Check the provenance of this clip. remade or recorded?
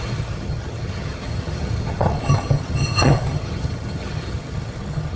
remade